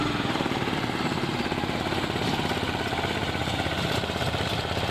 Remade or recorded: remade